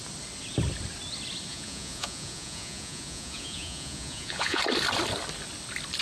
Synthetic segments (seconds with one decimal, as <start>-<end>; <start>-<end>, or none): 1.5-4.6